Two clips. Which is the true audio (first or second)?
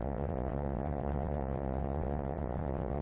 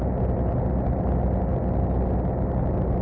second